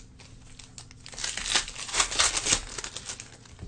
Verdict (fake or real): real